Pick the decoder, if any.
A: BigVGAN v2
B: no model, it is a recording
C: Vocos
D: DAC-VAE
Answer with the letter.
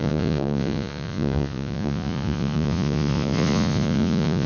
C